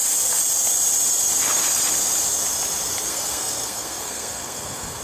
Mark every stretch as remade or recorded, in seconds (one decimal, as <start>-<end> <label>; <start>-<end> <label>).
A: 0.0-3.1 recorded; 3.1-5.0 remade